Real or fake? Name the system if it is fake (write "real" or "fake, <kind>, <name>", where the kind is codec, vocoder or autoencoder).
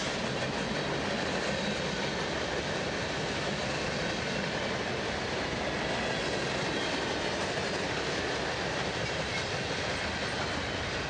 real